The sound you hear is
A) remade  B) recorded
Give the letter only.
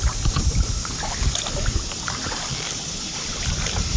B